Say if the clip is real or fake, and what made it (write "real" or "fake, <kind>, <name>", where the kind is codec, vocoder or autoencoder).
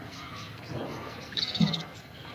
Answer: fake, codec, SNAC